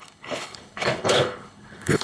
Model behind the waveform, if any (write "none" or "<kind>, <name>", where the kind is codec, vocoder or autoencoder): codec, HILCodec